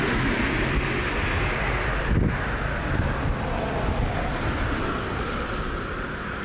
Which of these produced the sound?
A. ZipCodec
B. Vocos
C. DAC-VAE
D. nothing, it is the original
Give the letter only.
D